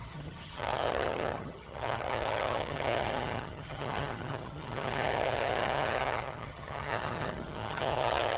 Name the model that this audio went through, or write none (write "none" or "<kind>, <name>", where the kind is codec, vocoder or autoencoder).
vocoder, HiFi-GAN